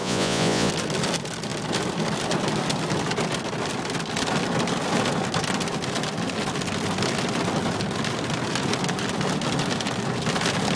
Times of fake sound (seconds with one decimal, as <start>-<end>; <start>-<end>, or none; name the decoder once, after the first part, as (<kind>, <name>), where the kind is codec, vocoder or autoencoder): 0.0-0.7 (vocoder, Vocos)